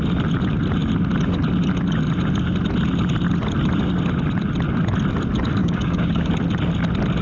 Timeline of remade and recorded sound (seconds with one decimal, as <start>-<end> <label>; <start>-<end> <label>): 0.0-5.6 recorded; 5.6-6.3 remade; 6.3-7.2 recorded